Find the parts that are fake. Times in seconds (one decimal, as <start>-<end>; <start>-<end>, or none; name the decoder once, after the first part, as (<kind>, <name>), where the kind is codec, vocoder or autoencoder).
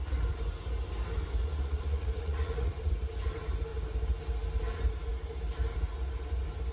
1.4-2.9 (vocoder, Vocos)